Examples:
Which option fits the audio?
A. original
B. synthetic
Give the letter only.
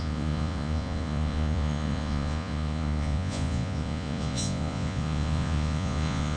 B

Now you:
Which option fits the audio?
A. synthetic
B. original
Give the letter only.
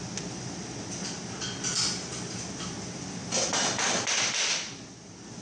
B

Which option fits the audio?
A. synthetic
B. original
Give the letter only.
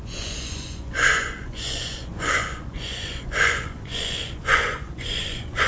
A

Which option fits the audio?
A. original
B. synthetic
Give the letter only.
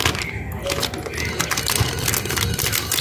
A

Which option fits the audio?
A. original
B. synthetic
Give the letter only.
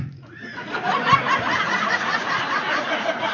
B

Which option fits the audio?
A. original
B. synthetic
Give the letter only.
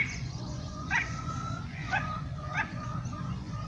B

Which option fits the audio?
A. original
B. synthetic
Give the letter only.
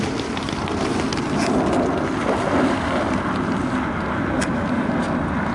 A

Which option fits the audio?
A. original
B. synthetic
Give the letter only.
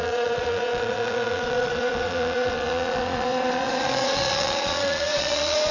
B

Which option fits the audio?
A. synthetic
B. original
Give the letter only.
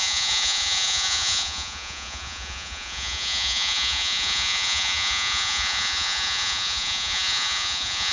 A